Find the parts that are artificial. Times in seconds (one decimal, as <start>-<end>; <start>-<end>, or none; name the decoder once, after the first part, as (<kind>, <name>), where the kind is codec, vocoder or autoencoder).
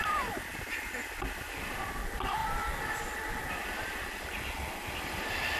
none